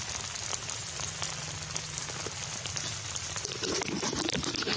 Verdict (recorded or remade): recorded